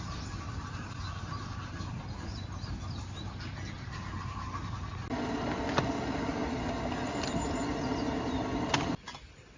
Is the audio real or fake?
real